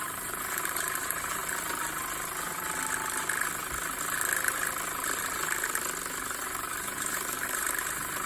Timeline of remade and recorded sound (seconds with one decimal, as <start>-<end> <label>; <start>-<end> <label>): 0.0-1.4 remade; 1.4-6.4 recorded; 6.4-8.3 remade